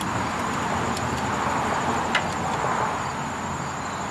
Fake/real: real